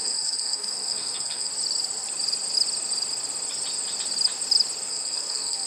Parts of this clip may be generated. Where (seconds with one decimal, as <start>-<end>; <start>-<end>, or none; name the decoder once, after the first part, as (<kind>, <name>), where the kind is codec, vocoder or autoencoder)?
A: 0.0-1.5 (codec, SNAC); 4.9-5.7